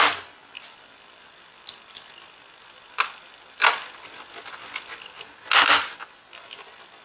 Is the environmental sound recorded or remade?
recorded